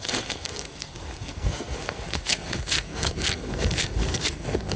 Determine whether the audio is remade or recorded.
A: remade